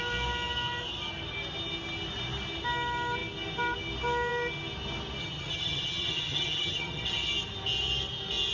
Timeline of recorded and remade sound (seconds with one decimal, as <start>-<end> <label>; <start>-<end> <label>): 0.0-5.2 recorded; 5.2-7.3 remade; 7.3-8.5 recorded